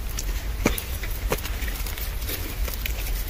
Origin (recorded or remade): recorded